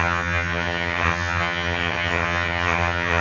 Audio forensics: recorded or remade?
remade